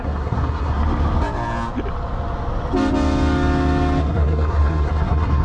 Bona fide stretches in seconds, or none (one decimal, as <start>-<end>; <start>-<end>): 0.8-4.0